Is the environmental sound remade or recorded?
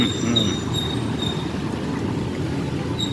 recorded